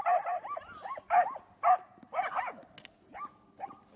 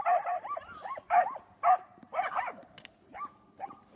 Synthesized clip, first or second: second